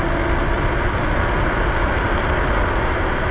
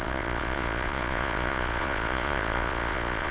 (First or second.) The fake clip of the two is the second